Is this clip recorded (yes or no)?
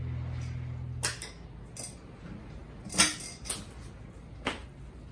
yes